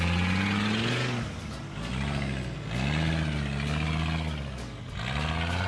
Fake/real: real